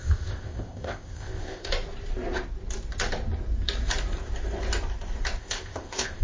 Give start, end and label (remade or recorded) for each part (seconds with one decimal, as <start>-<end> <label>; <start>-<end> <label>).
0.0-1.7 remade; 1.7-5.4 recorded; 5.4-6.2 remade